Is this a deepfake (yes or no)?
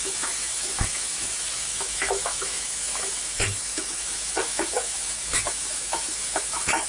yes